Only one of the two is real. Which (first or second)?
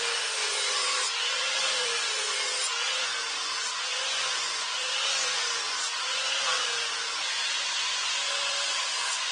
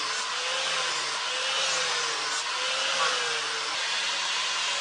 second